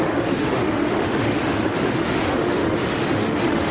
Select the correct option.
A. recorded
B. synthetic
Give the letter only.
B